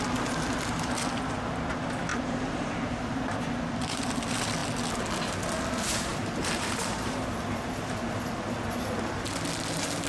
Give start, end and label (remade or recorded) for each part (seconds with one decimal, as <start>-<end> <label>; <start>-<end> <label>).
0.0-2.1 recorded; 2.1-3.3 remade; 3.3-6.1 recorded; 6.1-7.2 remade; 7.2-10.1 recorded